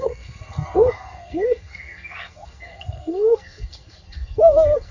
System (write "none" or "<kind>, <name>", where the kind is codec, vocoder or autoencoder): codec, SNAC